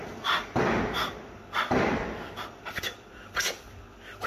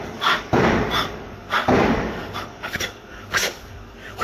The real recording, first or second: first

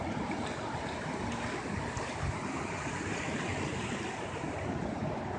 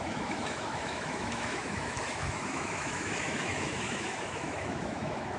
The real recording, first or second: first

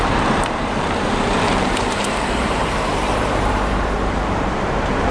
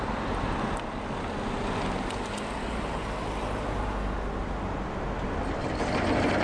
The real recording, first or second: second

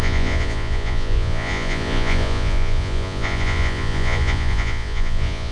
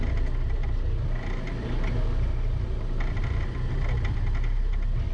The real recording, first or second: second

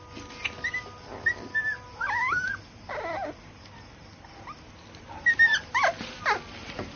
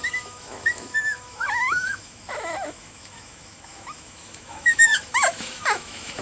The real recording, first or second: first